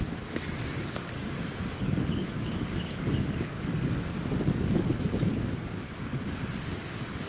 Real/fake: fake